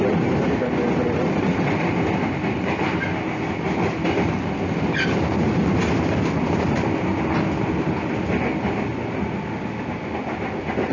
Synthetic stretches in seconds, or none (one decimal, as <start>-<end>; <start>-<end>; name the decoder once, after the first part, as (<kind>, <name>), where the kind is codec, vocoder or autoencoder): 7.1-8.2 (vocoder, BigVGAN v2)